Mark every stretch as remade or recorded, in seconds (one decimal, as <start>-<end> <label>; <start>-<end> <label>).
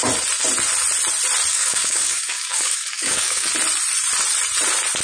0.0-1.5 recorded; 1.5-3.5 remade; 3.5-5.0 recorded